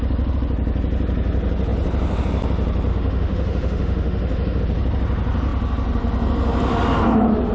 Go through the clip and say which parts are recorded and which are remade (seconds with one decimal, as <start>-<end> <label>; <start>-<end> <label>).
0.0-2.9 recorded; 2.9-4.6 remade; 4.6-7.5 recorded